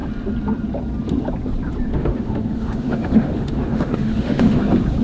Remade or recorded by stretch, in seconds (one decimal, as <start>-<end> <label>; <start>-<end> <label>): 0.0-1.9 recorded; 1.9-4.6 remade; 4.6-5.0 recorded